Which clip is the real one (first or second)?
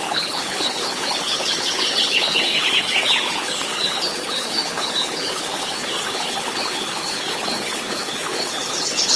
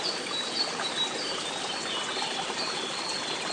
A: second